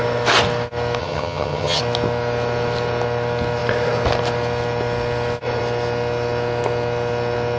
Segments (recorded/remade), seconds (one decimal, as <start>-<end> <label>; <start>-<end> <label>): 0.0-1.0 recorded; 1.0-1.8 remade; 1.8-7.6 recorded

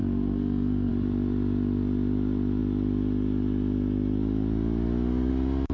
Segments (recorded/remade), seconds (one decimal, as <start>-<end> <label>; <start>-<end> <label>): 0.0-0.9 remade; 0.9-5.7 recorded

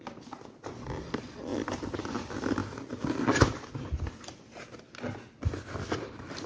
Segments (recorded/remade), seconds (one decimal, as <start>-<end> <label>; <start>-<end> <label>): 0.0-6.5 recorded

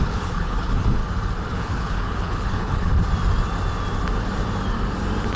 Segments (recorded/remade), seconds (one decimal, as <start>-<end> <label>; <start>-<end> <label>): 0.0-1.0 remade; 1.0-1.5 recorded; 1.5-2.9 remade; 2.9-5.4 recorded

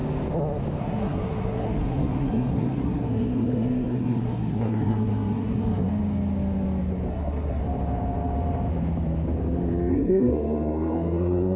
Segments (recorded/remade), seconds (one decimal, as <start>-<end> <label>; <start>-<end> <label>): 0.0-0.8 recorded; 0.8-5.9 remade; 5.9-7.1 recorded; 7.1-7.6 remade; 7.6-9.9 recorded; 9.9-11.6 remade

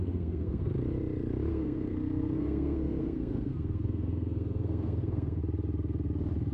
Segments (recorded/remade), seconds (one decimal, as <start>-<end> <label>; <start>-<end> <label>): 0.0-0.7 remade; 0.7-1.5 recorded; 1.5-5.4 remade; 5.4-6.5 recorded

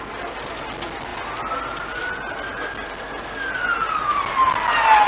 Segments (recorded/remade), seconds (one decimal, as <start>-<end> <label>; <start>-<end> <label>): 0.0-5.1 recorded

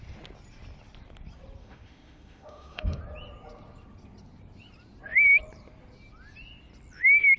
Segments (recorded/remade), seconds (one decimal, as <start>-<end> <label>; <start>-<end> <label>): 0.0-1.6 recorded; 1.6-3.0 remade; 3.0-7.4 recorded